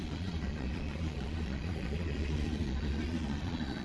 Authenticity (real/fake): fake